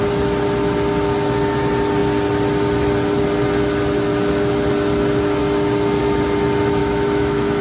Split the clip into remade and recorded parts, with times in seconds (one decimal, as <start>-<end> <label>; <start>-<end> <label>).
0.0-6.8 recorded; 6.8-7.6 remade